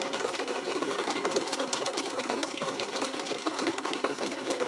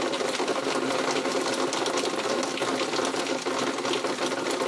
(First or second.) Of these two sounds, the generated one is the first